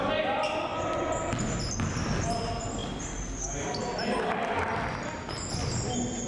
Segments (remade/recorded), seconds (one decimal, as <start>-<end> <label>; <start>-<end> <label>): 0.0-6.3 recorded